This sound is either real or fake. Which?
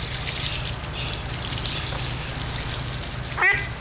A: real